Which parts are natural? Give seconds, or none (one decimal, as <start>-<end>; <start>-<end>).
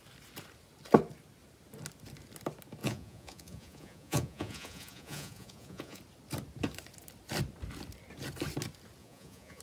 0.0-2.8; 6.0-9.0